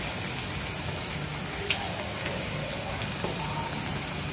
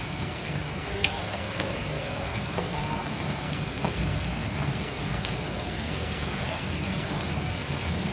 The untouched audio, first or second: first